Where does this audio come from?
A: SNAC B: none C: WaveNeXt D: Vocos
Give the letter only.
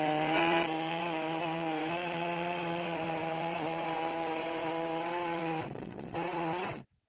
C